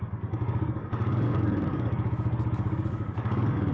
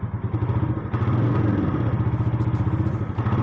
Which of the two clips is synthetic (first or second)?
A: first